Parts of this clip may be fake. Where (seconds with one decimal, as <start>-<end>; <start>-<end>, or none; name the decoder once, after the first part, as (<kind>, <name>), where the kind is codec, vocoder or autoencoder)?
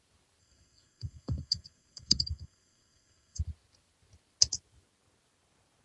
0.4-3.4 (codec, SNAC)